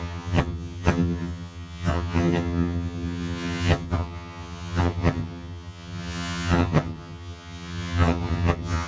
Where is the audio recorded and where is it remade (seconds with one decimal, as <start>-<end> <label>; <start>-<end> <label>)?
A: 0.0-8.9 remade